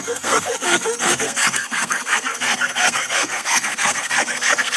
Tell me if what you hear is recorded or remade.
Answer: remade